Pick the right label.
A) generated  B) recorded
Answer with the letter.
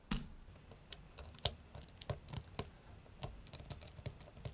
B